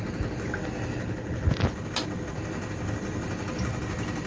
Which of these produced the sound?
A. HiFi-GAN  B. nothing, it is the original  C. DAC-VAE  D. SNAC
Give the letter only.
B